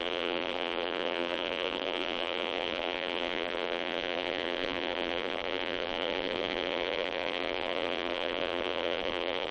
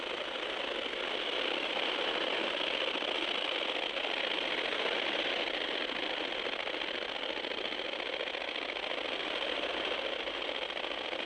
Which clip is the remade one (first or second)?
first